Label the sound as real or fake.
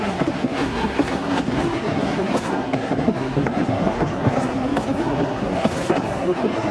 fake